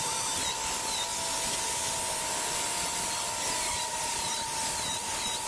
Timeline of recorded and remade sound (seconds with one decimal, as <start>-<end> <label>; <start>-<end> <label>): 0.0-0.4 remade; 0.4-3.7 recorded; 3.7-5.5 remade